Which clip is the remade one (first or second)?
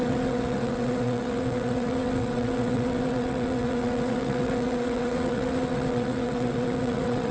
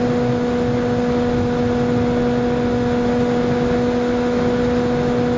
first